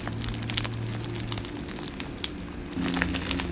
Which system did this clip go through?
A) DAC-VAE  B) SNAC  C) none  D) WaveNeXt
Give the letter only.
C